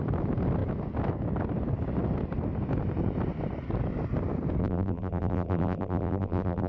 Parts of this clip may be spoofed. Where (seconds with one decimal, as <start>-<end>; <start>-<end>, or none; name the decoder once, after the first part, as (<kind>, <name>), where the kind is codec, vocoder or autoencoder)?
4.6-6.7 (vocoder, BigVGAN v2)